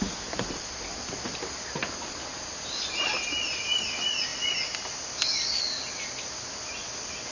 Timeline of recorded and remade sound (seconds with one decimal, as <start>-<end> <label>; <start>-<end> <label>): 0.0-7.3 recorded